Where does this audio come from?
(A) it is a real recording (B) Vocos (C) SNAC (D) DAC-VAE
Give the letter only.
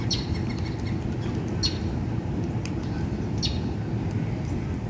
A